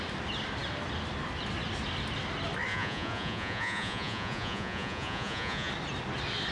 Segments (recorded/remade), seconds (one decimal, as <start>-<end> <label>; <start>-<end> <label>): 0.0-2.7 recorded; 2.7-5.7 remade; 5.7-6.5 recorded